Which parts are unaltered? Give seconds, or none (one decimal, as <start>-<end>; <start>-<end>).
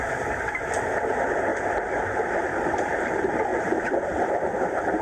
0.0-1.5; 3.1-3.5; 4.3-5.0